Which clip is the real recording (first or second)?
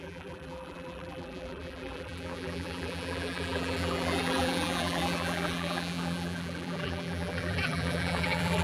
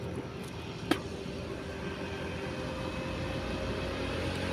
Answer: second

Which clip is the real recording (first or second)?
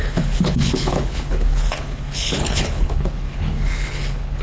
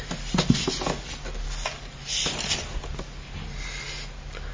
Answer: second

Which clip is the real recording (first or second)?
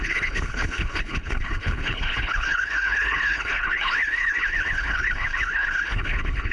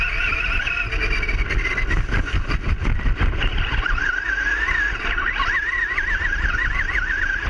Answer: second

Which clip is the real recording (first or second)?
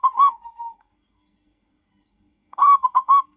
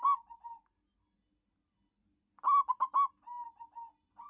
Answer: second